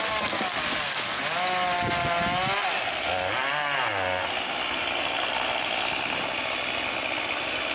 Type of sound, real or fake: real